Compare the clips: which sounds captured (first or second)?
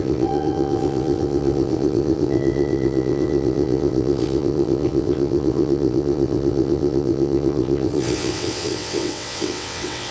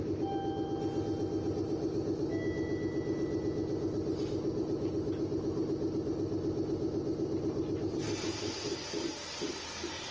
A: second